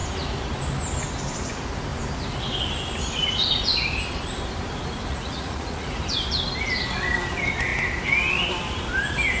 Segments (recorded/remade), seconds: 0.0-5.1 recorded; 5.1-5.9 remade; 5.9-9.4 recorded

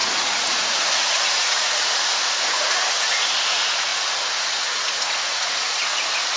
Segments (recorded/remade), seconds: 0.0-3.9 remade; 3.9-4.4 recorded; 4.4-6.4 remade

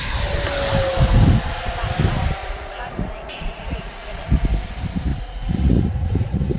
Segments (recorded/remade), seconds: 0.0-2.4 recorded; 2.4-4.3 remade; 4.3-5.1 recorded; 5.1-6.6 remade

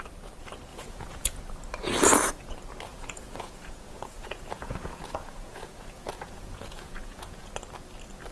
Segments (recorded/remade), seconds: 0.0-0.7 recorded; 0.7-1.4 remade; 1.4-2.9 recorded; 2.9-7.5 remade; 7.5-8.3 recorded

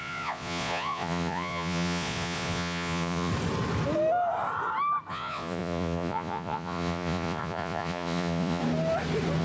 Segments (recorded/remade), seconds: 0.0-3.3 remade; 3.3-5.1 recorded; 5.1-8.6 remade; 8.6-9.4 recorded

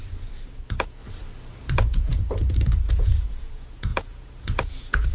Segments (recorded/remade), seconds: 0.0-0.6 recorded; 0.6-1.0 remade; 1.0-1.7 recorded; 1.7-5.1 remade